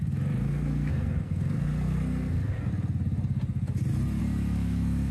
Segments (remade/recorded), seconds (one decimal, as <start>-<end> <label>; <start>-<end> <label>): 0.0-0.4 recorded; 0.4-2.7 remade; 2.7-4.2 recorded; 4.2-5.1 remade